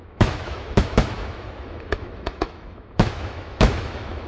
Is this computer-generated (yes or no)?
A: yes